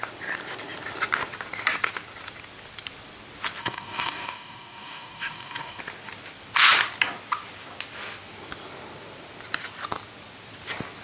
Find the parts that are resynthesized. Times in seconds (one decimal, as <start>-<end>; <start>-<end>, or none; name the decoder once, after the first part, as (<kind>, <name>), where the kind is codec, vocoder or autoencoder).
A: 3.6-5.8 (codec, DAC)